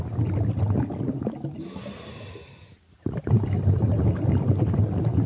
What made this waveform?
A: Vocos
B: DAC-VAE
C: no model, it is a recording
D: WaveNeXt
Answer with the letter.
C